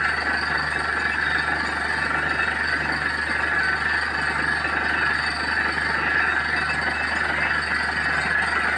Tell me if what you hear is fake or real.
real